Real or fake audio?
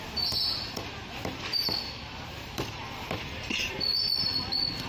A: fake